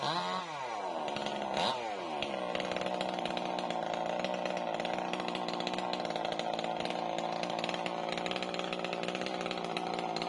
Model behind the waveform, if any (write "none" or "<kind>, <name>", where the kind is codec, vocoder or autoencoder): none